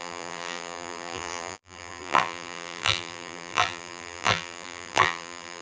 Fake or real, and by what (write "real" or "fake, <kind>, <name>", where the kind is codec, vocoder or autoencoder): fake, vocoder, BigVGAN v2